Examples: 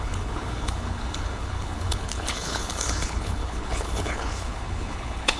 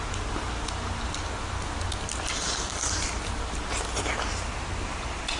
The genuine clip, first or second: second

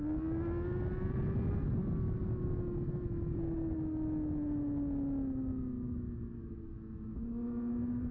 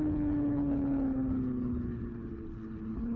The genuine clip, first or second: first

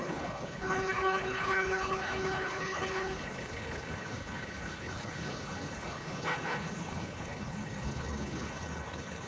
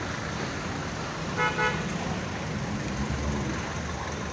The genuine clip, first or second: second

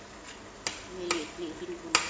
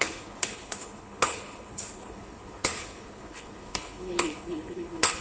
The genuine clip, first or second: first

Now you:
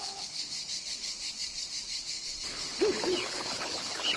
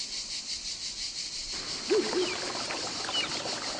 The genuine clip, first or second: second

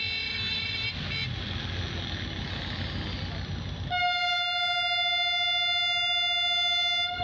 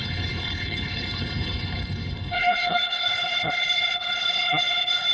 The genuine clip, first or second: first